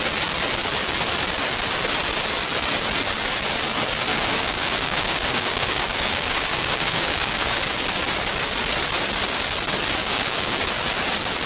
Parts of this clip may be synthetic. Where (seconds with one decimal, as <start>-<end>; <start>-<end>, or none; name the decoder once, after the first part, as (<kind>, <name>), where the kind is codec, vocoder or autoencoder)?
4.1-7.6 (codec, DAC); 10.0-10.6